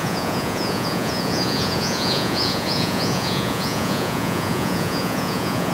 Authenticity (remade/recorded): remade